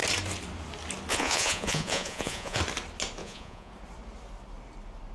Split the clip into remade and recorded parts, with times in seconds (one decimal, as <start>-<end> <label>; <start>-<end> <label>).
0.0-1.1 recorded; 1.1-2.6 remade; 2.6-3.2 recorded; 3.2-3.7 remade; 3.7-5.1 recorded